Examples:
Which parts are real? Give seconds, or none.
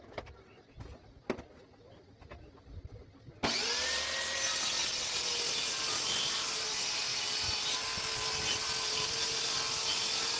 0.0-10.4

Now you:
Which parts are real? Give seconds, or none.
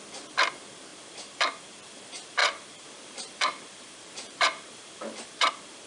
0.0-2.4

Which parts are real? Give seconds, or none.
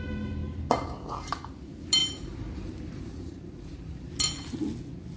0.0-2.0; 4.1-5.2